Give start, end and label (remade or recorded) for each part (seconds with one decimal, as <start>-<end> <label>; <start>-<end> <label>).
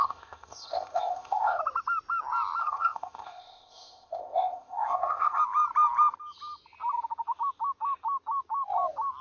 0.0-1.6 remade; 1.6-2.6 recorded; 2.6-5.4 remade; 5.4-9.2 recorded